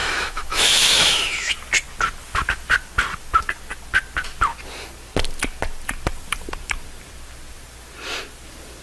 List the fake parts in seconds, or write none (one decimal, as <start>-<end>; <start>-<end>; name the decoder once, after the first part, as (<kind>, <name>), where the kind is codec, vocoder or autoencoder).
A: 0.0-1.5 (autoencoder, DAC-VAE)